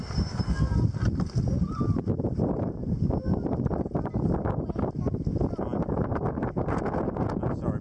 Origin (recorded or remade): recorded